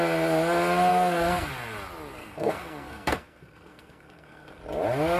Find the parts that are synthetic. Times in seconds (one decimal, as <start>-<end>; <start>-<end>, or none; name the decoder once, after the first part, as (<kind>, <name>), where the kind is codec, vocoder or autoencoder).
0.9-1.5 (codec, SNAC); 2.2-4.6